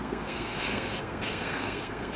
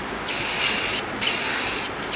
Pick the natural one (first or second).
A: second